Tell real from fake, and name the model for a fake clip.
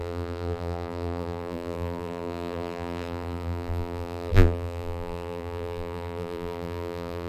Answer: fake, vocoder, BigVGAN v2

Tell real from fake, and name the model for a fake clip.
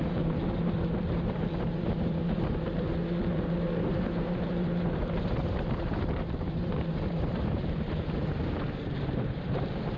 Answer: fake, vocoder, BigVGAN v2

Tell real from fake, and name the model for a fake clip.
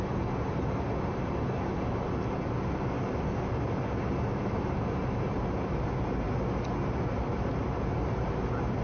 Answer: real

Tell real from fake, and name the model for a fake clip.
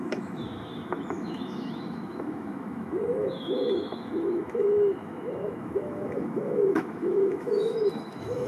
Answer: fake, autoencoder, DAC-VAE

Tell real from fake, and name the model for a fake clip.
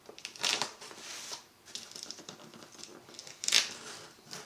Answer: real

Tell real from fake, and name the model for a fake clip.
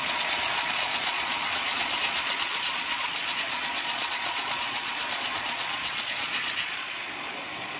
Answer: fake, vocoder, Vocos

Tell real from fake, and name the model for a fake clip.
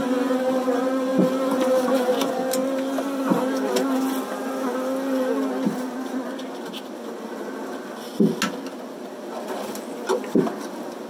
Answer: real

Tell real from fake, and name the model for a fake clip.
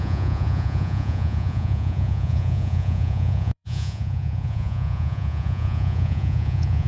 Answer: fake, vocoder, Vocos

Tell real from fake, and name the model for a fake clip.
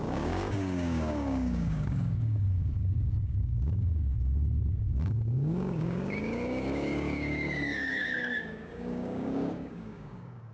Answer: fake, codec, DAC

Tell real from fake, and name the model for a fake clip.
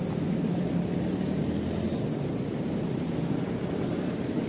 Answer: real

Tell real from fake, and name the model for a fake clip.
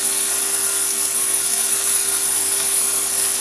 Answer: fake, codec, SNAC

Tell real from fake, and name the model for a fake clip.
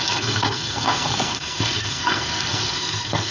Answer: fake, codec, SNAC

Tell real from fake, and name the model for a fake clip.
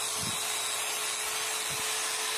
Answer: real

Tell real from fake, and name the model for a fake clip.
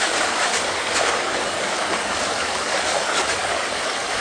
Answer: fake, codec, DAC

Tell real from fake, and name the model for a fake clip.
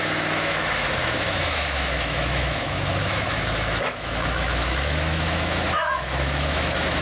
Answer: fake, autoencoder, DAC-VAE